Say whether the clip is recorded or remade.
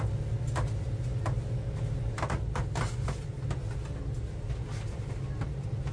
recorded